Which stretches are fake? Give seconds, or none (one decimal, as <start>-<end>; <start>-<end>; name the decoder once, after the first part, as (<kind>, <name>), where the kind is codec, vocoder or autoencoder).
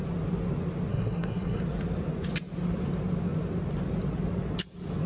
0.9-1.6 (codec, SNAC)